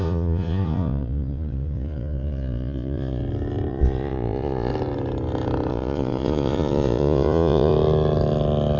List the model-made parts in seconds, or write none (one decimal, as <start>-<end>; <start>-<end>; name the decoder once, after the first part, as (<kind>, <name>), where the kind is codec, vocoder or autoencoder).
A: 0.0-3.2 (vocoder, Vocos); 3.7-4.7; 5.7-7.7